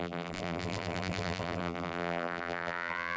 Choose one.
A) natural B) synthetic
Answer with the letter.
B